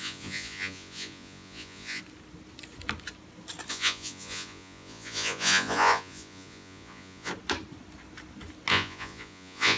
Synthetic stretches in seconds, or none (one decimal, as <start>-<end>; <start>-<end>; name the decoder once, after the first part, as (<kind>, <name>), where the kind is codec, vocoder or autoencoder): 0.0-2.0 (vocoder, Vocos); 3.7-7.3; 8.7-9.8